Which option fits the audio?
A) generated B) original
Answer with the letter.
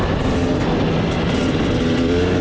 B